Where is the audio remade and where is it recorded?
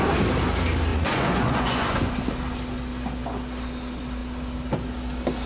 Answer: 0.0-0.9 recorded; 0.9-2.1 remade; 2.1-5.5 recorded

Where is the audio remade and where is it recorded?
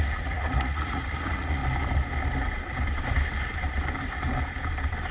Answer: 0.0-1.6 remade; 1.6-5.1 recorded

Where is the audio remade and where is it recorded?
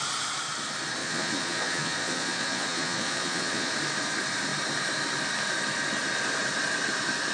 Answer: 0.0-1.0 recorded; 1.0-3.7 remade; 3.7-7.3 recorded